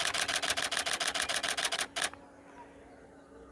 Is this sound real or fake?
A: real